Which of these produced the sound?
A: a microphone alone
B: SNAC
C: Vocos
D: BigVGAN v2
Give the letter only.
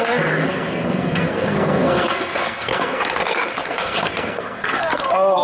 B